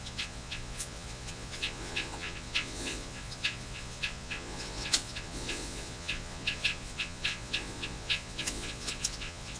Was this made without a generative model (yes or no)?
no